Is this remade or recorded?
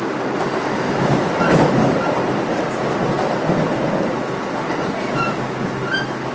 recorded